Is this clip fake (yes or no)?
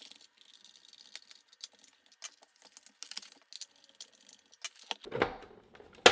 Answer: no